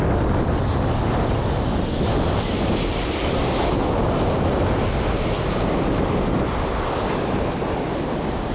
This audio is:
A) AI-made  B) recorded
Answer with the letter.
B